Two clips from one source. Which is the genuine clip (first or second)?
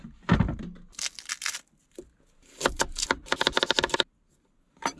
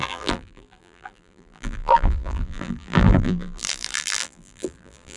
first